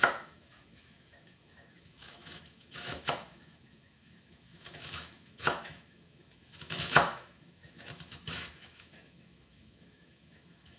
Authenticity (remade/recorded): remade